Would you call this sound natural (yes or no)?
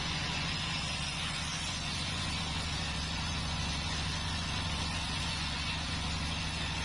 no